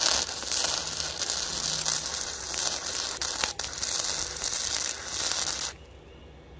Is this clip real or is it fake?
real